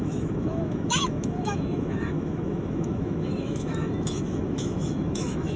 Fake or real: fake